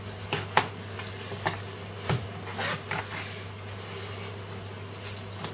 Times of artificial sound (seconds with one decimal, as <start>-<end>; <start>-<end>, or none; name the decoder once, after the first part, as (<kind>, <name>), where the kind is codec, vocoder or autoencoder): none